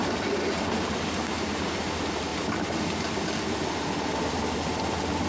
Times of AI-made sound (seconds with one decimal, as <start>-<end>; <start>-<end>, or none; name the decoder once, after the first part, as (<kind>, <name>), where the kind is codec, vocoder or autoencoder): none